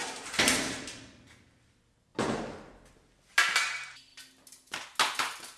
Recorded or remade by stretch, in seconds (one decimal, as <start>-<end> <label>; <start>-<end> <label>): 0.0-5.6 recorded